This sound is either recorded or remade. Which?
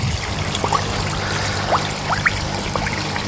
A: recorded